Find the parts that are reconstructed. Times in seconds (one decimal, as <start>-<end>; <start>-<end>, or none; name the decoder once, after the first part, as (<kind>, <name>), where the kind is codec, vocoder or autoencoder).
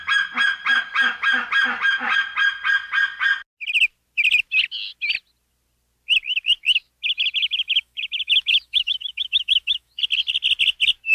7.4-10.0 (autoencoder, DAC-VAE)